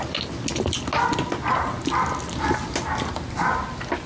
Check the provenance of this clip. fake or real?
real